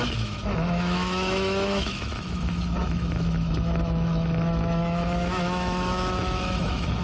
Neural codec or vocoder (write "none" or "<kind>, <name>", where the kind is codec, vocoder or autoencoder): autoencoder, DAC-VAE